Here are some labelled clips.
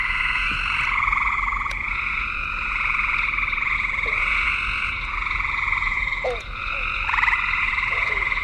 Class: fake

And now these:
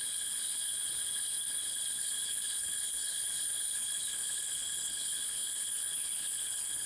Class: fake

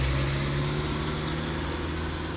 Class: real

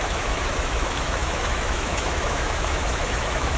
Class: fake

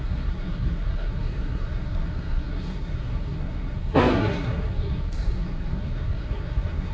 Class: fake